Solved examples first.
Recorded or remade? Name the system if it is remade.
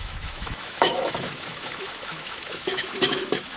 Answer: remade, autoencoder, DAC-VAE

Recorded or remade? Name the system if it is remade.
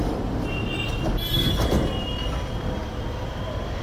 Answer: recorded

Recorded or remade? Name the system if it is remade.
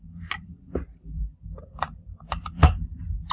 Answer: remade, vocoder, BigVGAN v2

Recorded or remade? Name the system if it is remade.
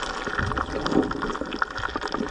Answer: recorded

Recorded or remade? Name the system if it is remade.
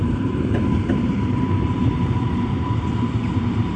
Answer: remade, vocoder, BigVGAN v2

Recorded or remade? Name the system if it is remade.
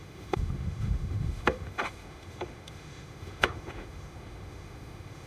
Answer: remade, autoencoder, DAC-VAE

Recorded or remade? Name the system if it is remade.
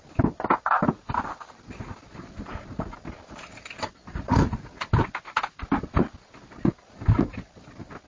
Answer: recorded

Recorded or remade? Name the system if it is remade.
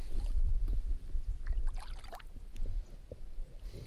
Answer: recorded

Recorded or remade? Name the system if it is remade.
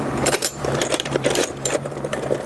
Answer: remade, vocoder, BigVGAN v2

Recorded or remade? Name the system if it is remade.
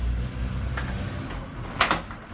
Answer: recorded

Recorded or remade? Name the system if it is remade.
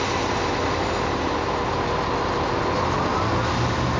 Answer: recorded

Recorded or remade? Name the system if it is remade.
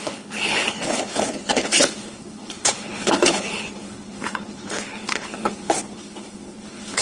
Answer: remade, codec, HILCodec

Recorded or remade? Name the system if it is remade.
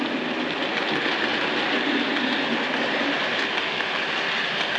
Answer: recorded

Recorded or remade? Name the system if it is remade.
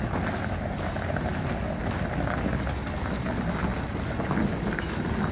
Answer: recorded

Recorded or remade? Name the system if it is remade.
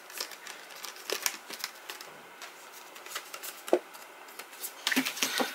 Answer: recorded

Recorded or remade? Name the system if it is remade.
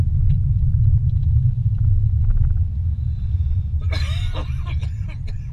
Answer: recorded